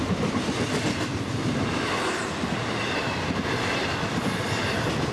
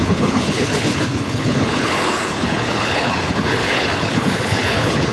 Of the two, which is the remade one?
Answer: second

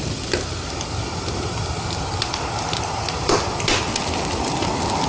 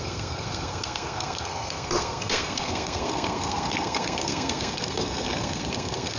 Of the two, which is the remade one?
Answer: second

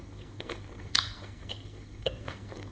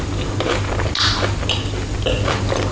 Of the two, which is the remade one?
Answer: first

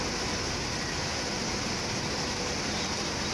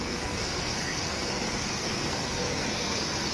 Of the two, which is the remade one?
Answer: second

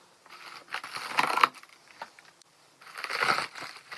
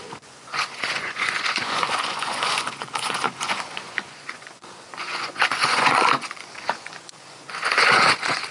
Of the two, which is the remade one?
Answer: second